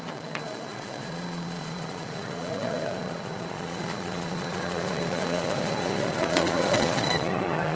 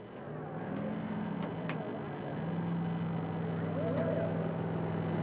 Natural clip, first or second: second